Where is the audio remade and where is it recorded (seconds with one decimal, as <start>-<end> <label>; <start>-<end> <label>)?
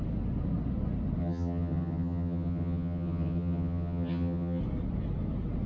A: 0.0-1.2 recorded; 1.2-4.6 remade; 4.6-5.7 recorded